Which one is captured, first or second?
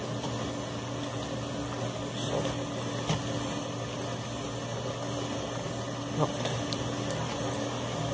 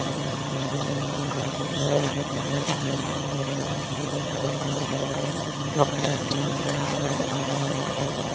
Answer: first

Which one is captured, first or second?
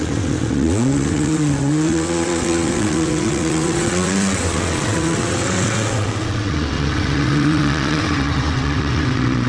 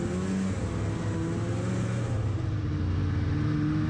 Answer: second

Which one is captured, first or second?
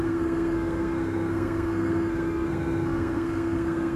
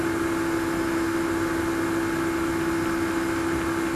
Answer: second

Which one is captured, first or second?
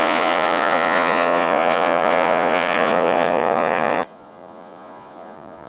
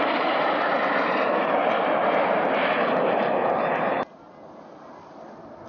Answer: second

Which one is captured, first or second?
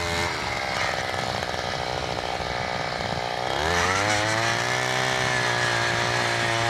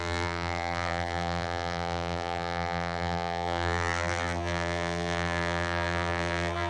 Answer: first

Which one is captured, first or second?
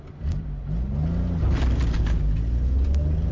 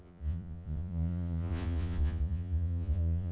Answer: first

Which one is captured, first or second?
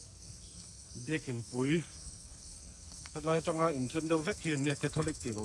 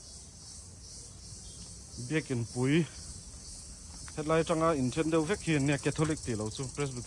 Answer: second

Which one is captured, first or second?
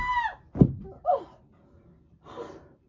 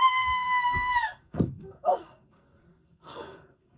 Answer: first